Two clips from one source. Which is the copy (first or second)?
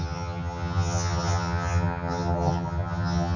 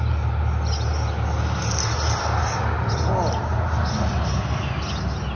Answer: first